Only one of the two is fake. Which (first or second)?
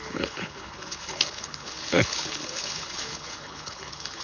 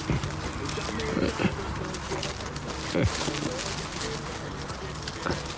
first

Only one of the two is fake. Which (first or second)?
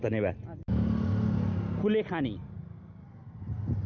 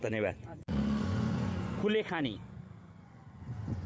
second